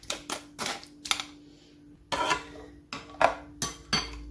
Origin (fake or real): real